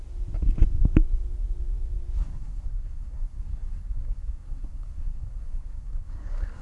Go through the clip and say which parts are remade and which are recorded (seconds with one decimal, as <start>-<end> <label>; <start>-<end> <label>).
0.0-2.2 recorded; 2.2-6.6 remade